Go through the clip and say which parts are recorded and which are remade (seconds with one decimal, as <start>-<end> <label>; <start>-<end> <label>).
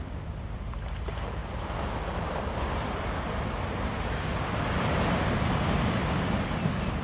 0.0-7.0 recorded